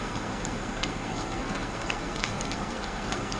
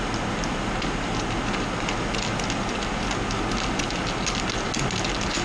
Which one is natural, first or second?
second